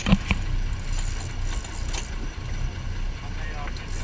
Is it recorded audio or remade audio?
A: recorded